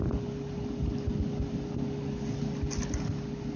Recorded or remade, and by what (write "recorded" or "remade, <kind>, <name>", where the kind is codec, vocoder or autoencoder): recorded